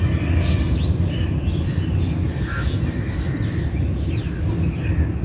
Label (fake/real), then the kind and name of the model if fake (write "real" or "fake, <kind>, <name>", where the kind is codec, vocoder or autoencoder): real